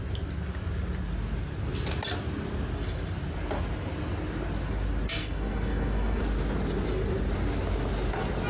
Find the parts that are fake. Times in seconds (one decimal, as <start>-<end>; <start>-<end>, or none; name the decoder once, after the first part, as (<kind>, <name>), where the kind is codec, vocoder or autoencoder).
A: 5.2-6.2 (codec, SNAC)